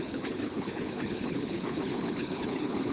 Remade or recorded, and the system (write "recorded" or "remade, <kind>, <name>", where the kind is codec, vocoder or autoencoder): remade, codec, HILCodec